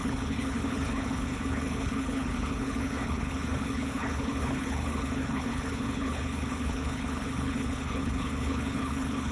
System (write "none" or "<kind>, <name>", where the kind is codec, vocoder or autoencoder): codec, HILCodec